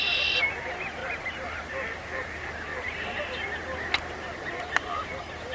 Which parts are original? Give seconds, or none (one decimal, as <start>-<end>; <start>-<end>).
0.0-1.0; 1.6-2.7; 5.0-5.5